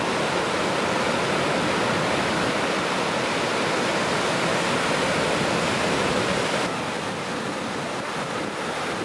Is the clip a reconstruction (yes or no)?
no